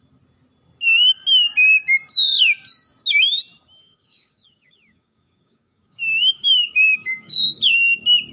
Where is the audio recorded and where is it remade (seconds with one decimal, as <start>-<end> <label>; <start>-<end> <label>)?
0.0-3.8 recorded; 3.8-7.6 remade; 7.6-8.3 recorded